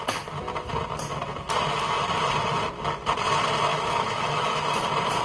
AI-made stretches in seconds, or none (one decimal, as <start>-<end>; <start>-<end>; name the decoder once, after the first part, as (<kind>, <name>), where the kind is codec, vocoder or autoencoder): 3.7-4.8 (autoencoder, DAC-VAE)